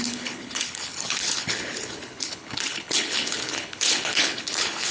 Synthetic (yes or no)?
yes